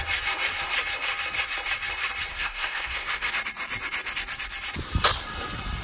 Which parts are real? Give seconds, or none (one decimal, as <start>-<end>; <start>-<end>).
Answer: 0.0-2.3; 3.3-5.8